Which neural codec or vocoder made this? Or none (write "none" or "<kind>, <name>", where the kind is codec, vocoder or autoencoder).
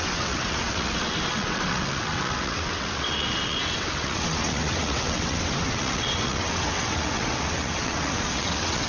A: vocoder, WaveNeXt